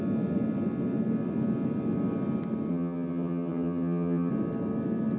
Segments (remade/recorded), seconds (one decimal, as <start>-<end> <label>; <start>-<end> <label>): 0.0-2.7 recorded; 2.7-4.3 remade; 4.3-5.2 recorded